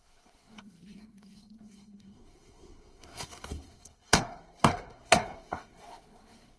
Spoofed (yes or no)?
yes